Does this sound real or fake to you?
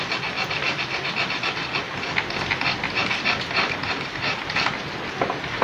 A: real